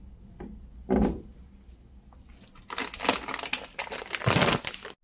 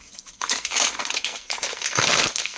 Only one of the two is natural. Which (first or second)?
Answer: first